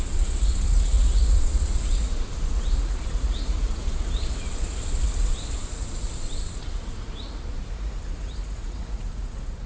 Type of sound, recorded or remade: remade